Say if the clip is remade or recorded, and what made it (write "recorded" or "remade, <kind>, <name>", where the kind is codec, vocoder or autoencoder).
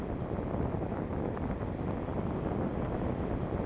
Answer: recorded